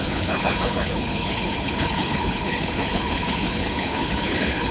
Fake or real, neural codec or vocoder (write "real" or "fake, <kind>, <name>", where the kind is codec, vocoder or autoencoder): fake, codec, HILCodec